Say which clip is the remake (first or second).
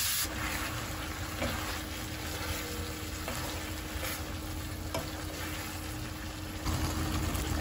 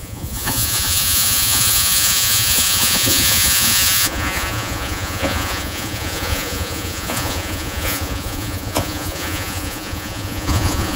second